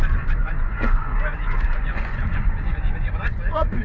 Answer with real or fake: fake